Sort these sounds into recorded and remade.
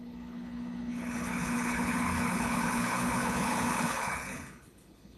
remade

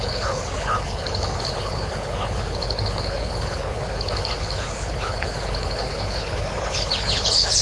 remade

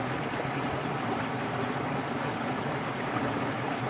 recorded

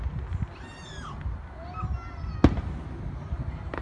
recorded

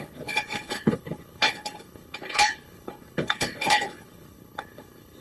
remade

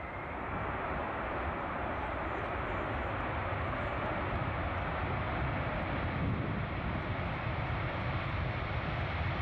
recorded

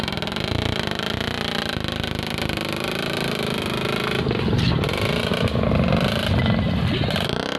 recorded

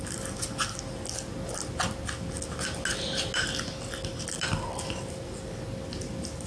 recorded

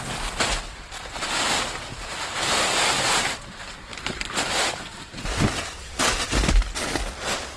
recorded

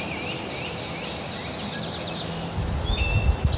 recorded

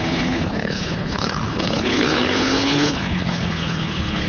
remade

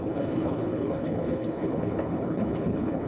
remade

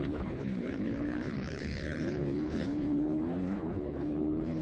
remade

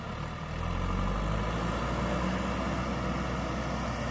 recorded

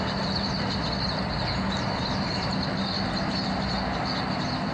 recorded